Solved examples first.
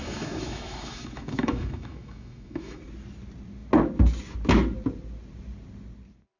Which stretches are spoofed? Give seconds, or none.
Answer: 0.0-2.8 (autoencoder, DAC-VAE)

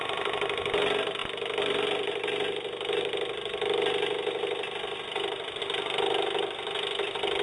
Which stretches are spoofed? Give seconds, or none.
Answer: none

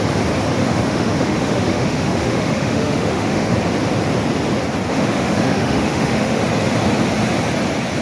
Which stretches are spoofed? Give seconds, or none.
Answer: 0.6-3.5 (autoencoder, DAC-VAE); 4.9-6.4

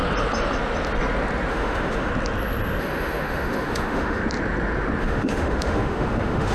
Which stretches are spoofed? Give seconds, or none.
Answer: 1.5-2.1 (autoencoder, DAC-VAE); 2.8-4.2; 5.0-6.5

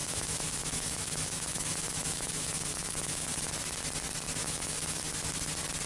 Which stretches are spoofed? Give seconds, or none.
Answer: 0.0-3.5 (autoencoder, DAC-VAE); 4.4-5.0

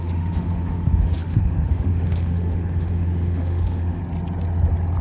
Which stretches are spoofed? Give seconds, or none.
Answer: 0.0-4.0 (autoencoder, DAC-VAE)

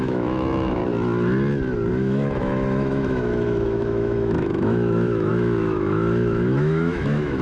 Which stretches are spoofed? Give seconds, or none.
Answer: 0.0-0.8 (autoencoder, DAC-VAE); 1.9-7.4